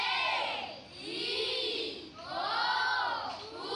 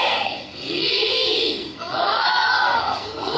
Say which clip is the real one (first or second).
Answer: first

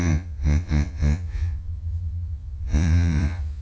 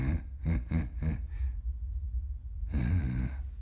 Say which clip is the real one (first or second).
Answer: second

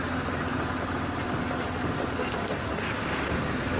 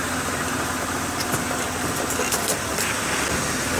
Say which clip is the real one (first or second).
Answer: second